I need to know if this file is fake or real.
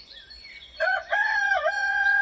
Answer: fake